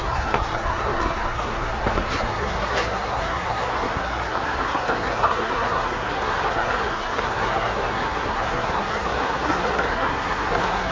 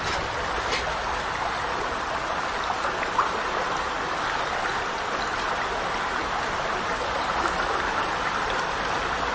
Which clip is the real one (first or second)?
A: second